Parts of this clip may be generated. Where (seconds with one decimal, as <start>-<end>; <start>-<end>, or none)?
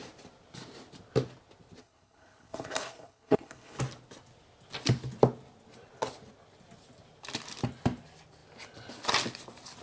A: 1.8-3.8